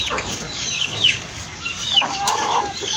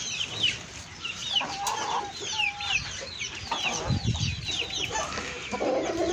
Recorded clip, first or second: second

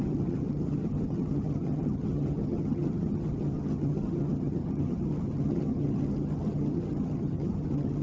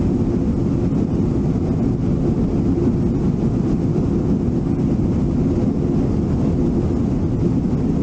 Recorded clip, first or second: second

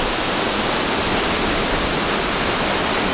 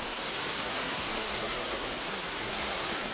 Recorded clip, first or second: first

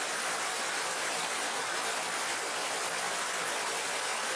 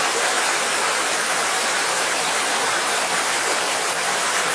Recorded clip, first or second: first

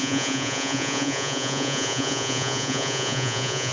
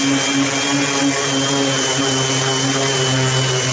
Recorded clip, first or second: second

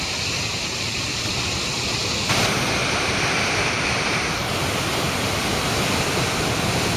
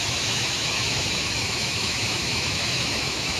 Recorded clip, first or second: first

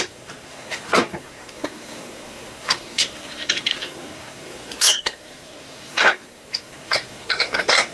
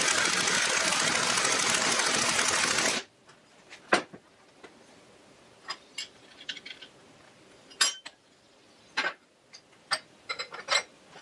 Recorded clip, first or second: second